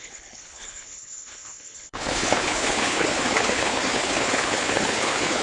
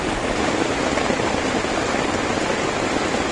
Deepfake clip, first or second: first